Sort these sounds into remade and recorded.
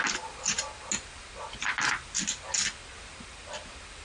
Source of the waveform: recorded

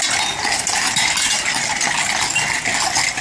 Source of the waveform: recorded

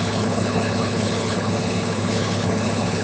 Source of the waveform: remade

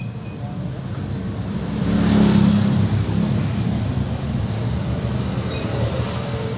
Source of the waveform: recorded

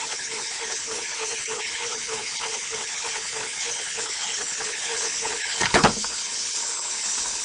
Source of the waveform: remade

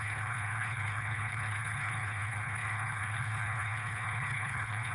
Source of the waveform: remade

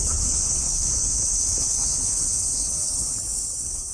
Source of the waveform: remade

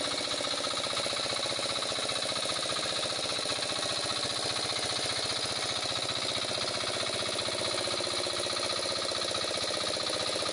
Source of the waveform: recorded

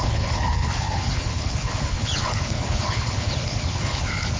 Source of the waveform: remade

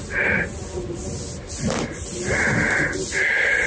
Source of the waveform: recorded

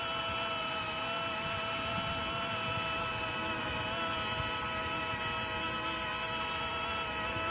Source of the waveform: recorded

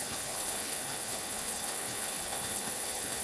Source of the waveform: remade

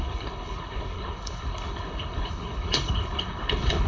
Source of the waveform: remade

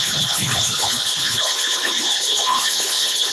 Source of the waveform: remade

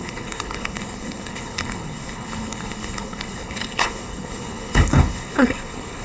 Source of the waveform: remade